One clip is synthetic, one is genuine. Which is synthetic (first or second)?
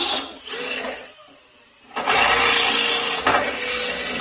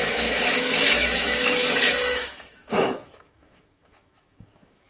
second